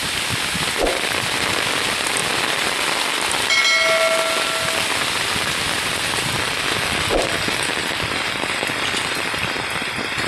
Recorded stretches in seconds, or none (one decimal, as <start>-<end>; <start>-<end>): 0.0-10.3